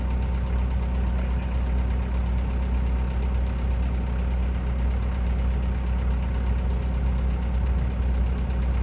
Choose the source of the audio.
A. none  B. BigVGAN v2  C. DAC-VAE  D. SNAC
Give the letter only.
A